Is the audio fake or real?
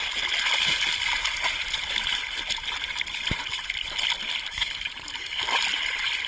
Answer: real